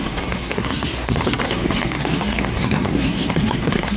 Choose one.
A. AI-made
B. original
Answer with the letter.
A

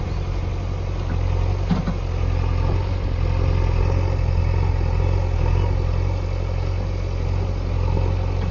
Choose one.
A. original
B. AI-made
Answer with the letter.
A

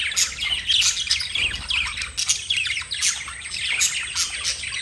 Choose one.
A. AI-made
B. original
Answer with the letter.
B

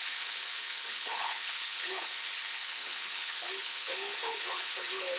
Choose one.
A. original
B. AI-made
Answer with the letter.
B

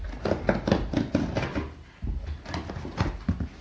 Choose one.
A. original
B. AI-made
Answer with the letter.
A